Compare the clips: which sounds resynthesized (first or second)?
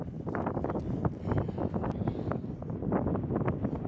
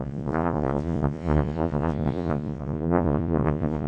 second